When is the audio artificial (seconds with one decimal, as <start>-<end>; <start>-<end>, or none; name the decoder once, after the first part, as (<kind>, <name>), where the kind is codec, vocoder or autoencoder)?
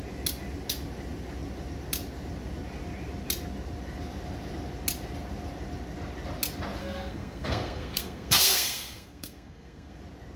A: 6.8-10.0 (codec, SNAC)